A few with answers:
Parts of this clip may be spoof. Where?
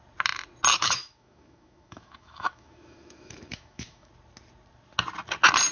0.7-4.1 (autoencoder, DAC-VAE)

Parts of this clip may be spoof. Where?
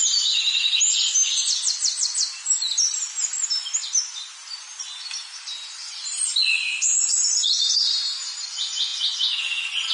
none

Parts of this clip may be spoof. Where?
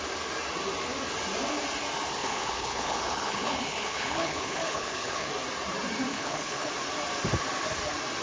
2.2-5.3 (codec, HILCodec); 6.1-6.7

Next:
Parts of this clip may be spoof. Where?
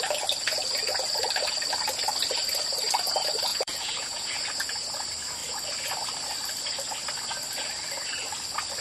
3.5-4.3 (vocoder, Vocos)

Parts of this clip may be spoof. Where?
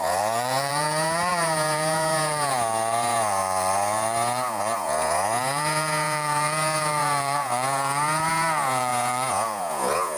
0.0-10.2 (vocoder, Vocos)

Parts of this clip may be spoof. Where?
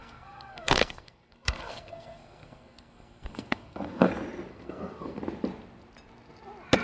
0.0-4.1 (codec, SNAC); 4.5-5.2